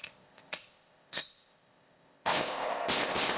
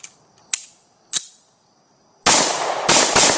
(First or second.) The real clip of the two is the second